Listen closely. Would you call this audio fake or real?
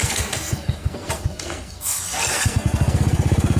fake